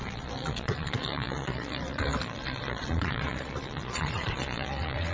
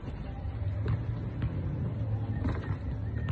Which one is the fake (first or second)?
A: first